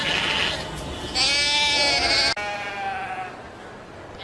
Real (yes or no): yes